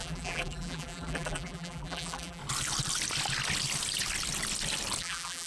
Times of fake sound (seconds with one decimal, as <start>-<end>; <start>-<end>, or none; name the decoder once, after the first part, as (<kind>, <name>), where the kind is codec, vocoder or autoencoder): 0.0-2.4 (vocoder, BigVGAN v2); 5.0-5.5